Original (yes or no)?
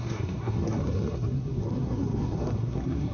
no